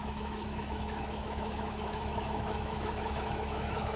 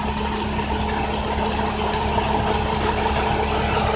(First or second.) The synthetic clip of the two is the first